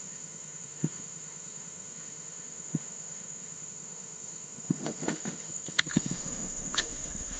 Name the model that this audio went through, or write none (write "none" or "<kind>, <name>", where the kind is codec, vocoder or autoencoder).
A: autoencoder, DAC-VAE